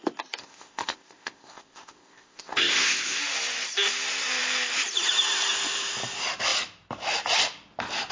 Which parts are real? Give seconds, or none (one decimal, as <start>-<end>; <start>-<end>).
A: 0.0-0.4; 3.2-8.1

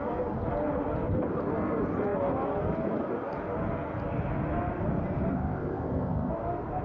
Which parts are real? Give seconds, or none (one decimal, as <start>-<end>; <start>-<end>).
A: 0.0-5.3; 6.3-6.8

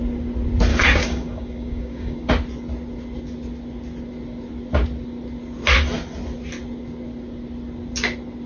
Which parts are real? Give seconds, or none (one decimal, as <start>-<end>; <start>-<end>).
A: 0.0-0.7; 2.3-8.5